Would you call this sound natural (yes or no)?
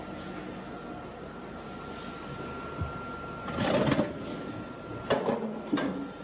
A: yes